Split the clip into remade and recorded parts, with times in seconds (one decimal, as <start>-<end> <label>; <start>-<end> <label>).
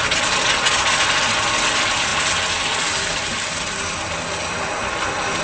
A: 0.0-5.4 recorded